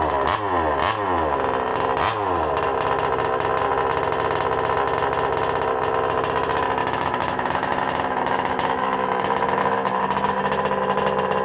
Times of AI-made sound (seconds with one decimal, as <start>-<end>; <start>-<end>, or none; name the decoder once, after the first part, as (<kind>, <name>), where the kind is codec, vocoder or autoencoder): 6.8-10.0 (autoencoder, DAC-VAE)